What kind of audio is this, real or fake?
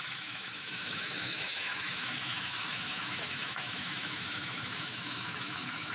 fake